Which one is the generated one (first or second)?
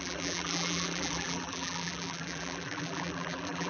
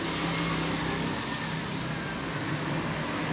first